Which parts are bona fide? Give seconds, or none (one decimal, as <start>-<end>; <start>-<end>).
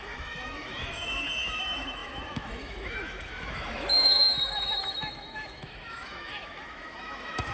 none